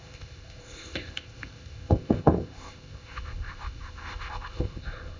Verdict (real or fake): fake